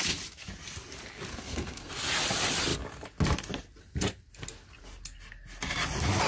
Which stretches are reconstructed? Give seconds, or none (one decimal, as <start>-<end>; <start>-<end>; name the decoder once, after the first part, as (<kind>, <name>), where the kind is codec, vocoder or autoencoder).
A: 1.3-1.9 (codec, SNAC)